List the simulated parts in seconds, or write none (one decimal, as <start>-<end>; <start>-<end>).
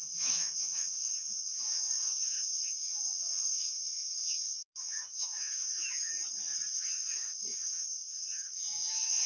0.0-6.1; 6.7-9.3